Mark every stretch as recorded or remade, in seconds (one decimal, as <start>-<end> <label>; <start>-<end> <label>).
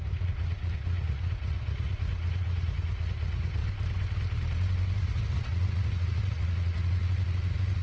0.0-3.6 remade; 3.6-5.0 recorded; 5.0-7.8 remade